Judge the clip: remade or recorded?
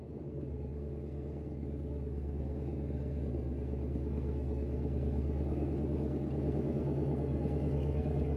remade